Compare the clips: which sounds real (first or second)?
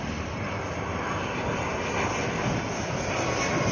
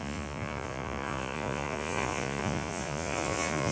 first